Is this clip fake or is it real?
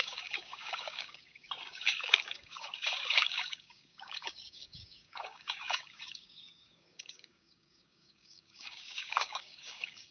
fake